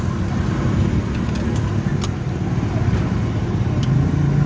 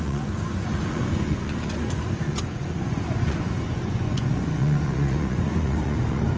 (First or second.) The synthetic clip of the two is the second